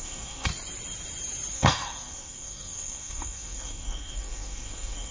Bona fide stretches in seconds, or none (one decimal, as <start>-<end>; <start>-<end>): 0.5-1.5